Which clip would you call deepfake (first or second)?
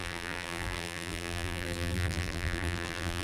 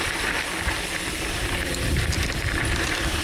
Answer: first